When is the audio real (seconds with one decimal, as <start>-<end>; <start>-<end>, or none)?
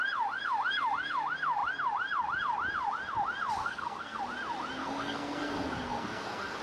0.0-3.6; 4.2-4.8